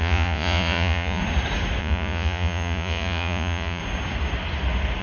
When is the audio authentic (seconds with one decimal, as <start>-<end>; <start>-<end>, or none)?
1.2-1.8; 3.8-5.0